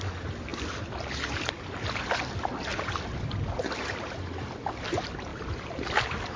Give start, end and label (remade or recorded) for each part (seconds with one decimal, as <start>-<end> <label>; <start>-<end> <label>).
0.0-5.3 recorded; 5.3-6.4 remade